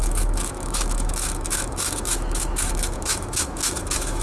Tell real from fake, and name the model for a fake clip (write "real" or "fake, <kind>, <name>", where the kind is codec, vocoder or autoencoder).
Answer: fake, autoencoder, DAC-VAE